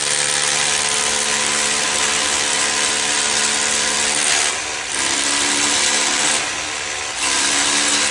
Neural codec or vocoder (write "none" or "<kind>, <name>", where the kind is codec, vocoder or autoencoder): none